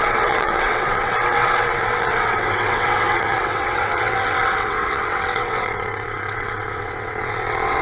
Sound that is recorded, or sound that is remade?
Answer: remade